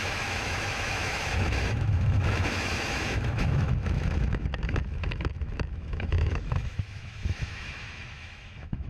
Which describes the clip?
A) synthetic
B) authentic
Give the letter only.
A